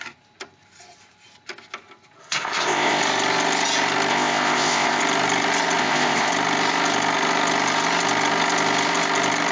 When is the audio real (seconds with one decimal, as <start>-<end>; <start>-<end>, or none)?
0.0-2.2; 3.0-4.1; 5.0-5.8; 6.3-9.5